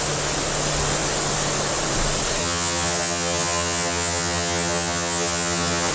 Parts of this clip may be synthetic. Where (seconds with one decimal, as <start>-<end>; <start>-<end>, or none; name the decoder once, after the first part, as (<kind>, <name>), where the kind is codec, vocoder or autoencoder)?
2.4-5.9 (vocoder, HiFi-GAN)

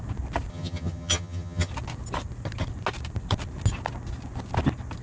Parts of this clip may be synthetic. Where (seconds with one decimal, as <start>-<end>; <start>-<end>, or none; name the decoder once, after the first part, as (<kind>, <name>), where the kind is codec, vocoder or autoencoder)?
0.5-1.7 (vocoder, HiFi-GAN)